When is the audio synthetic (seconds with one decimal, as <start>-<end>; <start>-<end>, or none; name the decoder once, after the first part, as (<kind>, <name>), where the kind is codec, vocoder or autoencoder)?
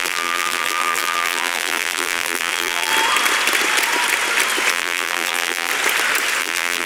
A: 0.0-2.9 (vocoder, BigVGAN v2); 4.7-5.7; 6.4-6.9